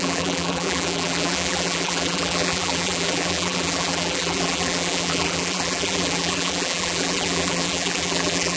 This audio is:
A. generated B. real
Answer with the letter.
A